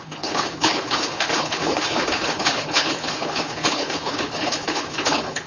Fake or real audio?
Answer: fake